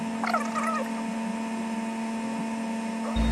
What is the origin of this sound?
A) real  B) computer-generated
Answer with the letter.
A